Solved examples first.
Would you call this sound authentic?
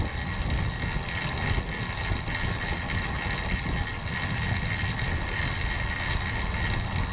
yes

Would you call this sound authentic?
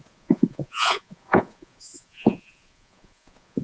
no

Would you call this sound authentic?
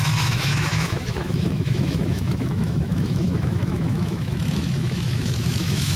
no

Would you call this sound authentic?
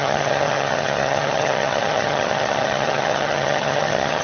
no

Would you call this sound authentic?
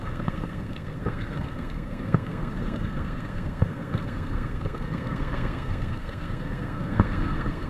no